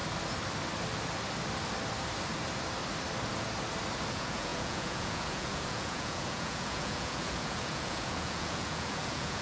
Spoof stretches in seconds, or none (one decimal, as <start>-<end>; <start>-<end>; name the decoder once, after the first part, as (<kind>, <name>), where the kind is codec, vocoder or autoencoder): 4.1-9.4 (vocoder, Vocos)